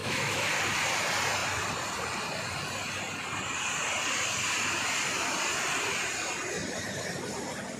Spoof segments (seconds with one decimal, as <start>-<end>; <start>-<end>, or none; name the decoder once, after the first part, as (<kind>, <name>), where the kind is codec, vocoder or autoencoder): 0.0-0.5 (autoencoder, DAC-VAE)